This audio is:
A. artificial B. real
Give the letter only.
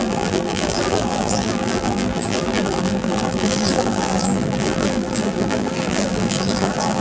A